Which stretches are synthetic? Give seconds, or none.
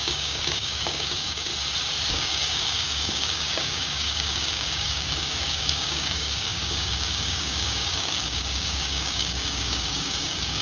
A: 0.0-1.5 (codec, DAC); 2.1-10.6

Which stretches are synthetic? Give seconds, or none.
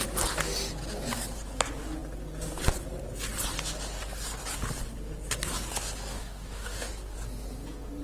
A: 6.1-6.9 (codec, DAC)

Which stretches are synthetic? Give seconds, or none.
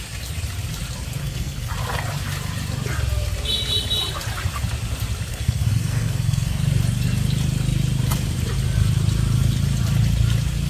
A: 1.2-1.7 (codec, SNAC); 5.3-6.6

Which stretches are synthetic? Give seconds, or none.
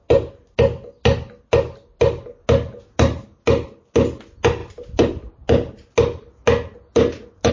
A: none